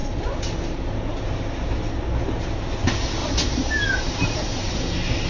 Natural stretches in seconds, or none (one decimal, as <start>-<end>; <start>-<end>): 0.0-3.2; 4.7-5.3